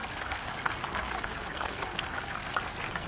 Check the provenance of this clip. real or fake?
fake